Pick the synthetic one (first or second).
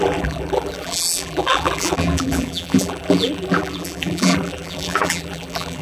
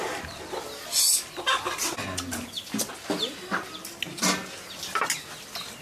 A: first